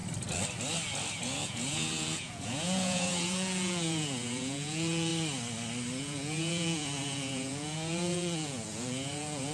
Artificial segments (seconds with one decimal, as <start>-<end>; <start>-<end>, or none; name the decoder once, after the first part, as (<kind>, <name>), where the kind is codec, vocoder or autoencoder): 1.2-5.1 (vocoder, Vocos); 6.0-9.5